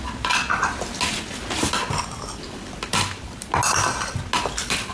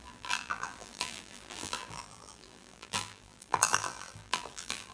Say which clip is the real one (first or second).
first